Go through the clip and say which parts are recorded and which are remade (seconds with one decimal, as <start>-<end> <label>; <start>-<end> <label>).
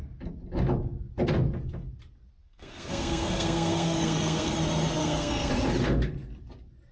0.0-2.4 recorded; 2.4-4.5 remade; 4.5-5.0 recorded; 5.0-5.5 remade; 5.5-6.9 recorded